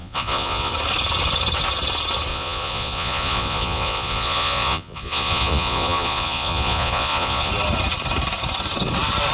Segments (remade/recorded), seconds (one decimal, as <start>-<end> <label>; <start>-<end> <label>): 0.0-0.7 remade; 0.7-2.3 recorded; 2.3-7.5 remade; 7.5-9.3 recorded